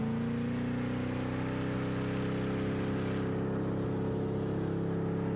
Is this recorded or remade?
recorded